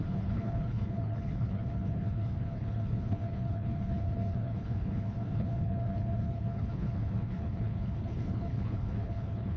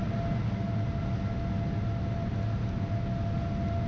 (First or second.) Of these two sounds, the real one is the second